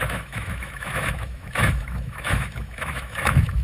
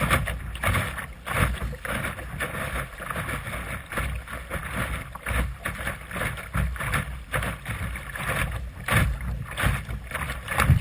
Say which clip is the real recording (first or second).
second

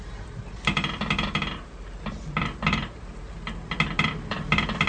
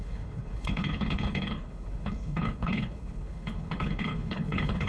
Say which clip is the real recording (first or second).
first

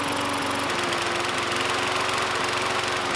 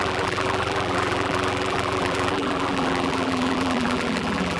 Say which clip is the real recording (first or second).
first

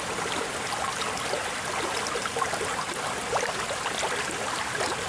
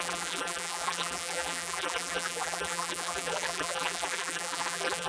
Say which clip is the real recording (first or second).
first